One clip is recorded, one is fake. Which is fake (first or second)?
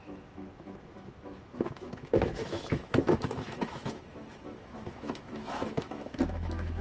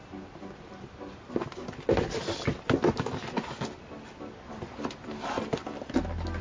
first